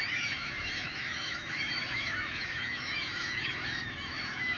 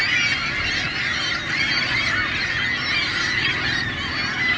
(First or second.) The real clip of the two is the second